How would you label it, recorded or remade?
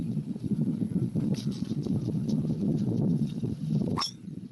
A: remade